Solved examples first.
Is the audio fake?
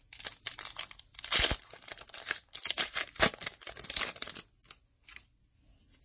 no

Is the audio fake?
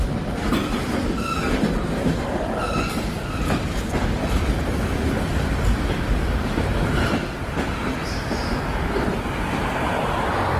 no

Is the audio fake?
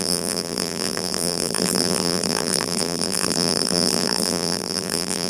yes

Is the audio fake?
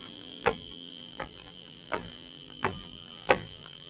yes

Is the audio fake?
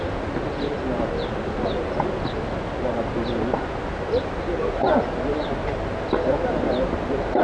no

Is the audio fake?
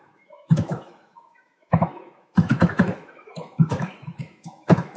yes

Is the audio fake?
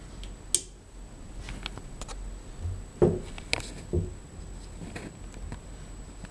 no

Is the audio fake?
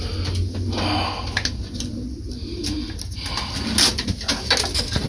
no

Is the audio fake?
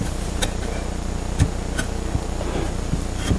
no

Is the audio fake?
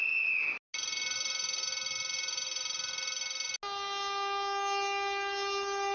no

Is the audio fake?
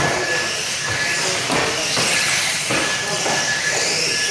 no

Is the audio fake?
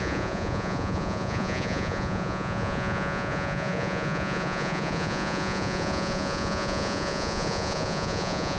yes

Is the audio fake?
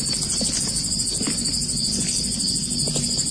no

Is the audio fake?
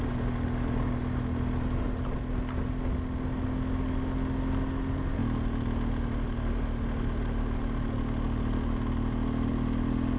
no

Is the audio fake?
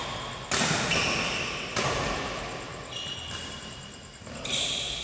no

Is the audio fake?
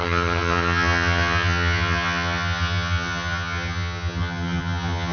yes